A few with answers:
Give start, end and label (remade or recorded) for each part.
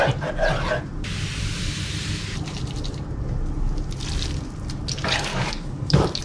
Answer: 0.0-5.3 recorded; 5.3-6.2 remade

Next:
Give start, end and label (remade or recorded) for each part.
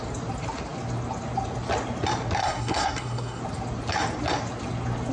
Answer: 0.0-2.4 recorded; 2.4-3.4 remade; 3.4-5.1 recorded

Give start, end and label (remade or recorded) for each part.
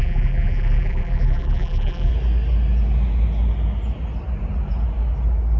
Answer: 0.0-2.1 remade; 2.1-5.6 recorded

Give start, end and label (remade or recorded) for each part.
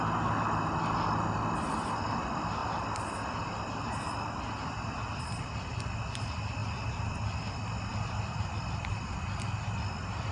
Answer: 0.0-10.3 recorded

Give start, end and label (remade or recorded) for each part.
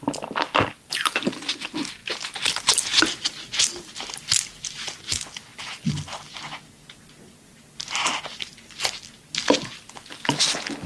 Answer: 0.0-10.9 recorded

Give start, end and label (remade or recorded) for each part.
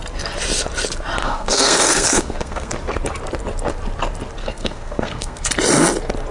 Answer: 0.0-1.2 recorded; 1.2-2.7 remade; 2.7-4.4 recorded; 4.4-5.5 remade; 5.5-6.3 recorded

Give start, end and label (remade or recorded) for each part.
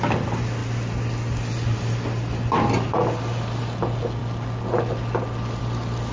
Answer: 0.0-6.1 recorded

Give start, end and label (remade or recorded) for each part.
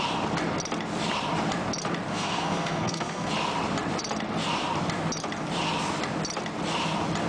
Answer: 0.0-2.1 recorded; 2.1-3.3 remade; 3.3-7.3 recorded